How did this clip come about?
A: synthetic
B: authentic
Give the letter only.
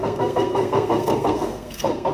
A